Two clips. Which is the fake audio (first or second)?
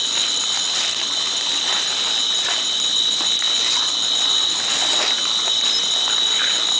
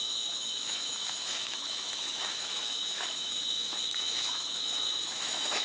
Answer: second